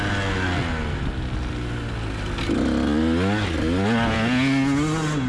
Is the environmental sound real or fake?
real